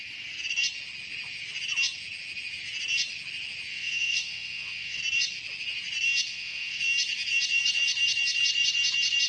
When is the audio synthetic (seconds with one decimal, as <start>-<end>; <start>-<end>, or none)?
3.7-5.0; 6.3-6.8